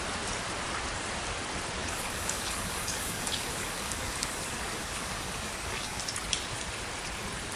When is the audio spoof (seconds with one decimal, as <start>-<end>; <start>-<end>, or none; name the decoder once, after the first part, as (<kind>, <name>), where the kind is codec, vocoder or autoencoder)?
1.8-6.0 (codec, DAC)